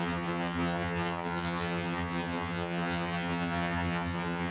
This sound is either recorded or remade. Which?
remade